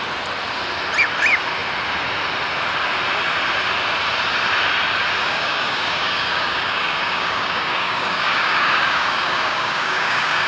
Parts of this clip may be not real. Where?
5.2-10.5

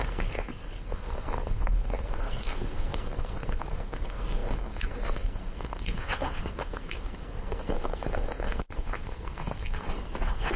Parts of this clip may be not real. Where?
0.0-10.6

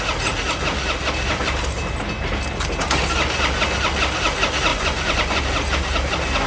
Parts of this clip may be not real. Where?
4.7-5.4

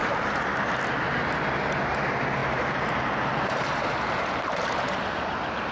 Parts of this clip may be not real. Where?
0.0-0.8; 2.4-5.7

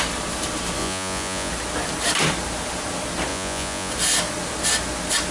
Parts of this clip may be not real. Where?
0.8-1.5; 3.3-3.9

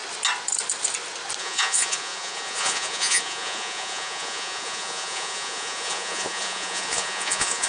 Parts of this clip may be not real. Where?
1.4-7.7

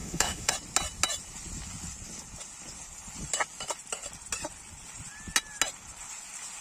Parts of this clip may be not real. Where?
0.0-0.5